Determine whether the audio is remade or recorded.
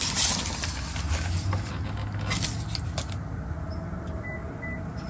recorded